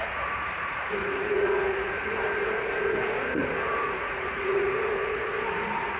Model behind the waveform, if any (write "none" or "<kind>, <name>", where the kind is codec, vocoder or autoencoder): vocoder, Vocos